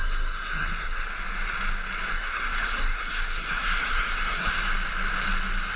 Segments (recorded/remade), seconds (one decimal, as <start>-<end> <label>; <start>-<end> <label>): 0.0-1.1 remade; 1.1-2.1 recorded; 2.1-4.5 remade; 4.5-5.8 recorded

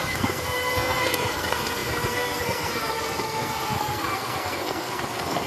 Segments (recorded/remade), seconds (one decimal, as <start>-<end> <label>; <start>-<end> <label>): 0.0-5.5 remade

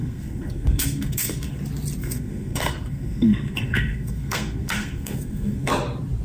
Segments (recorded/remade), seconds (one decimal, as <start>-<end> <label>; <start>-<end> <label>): 0.0-1.6 remade; 1.6-2.0 recorded; 2.0-5.7 remade; 5.7-6.2 recorded